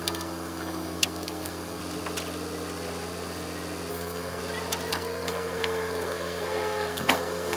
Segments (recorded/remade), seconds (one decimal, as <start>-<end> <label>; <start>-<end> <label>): 0.0-1.8 remade; 1.8-3.9 recorded; 3.9-4.4 remade; 4.4-4.9 recorded; 4.9-7.6 remade